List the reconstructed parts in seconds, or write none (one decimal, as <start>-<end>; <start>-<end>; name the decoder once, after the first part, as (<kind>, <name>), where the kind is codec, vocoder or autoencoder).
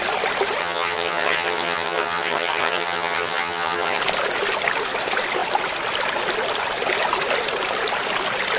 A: 0.6-4.0 (vocoder, HiFi-GAN)